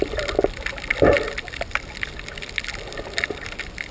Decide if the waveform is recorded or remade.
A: recorded